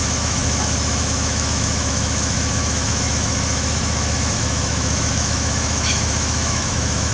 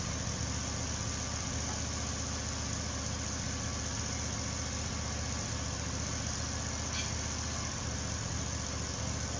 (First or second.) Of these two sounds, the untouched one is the second